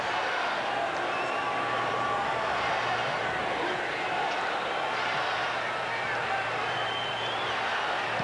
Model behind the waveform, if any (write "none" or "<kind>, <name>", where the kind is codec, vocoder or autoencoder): vocoder, BigVGAN v2